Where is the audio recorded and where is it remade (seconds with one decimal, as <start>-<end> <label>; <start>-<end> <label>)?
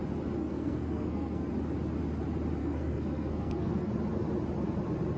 0.0-0.4 recorded; 0.4-1.5 remade; 1.5-2.6 recorded; 2.6-3.9 remade; 3.9-5.2 recorded